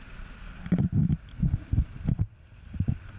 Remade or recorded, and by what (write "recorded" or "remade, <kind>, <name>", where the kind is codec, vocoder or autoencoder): recorded